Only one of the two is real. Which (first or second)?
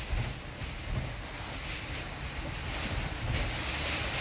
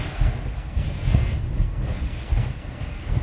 first